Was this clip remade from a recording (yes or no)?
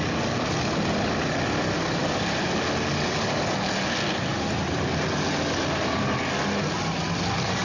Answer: no